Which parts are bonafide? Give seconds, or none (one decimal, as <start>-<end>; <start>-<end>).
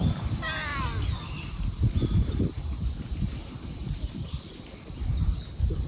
0.0-3.8; 5.4-5.9